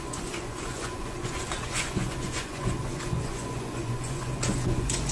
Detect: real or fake fake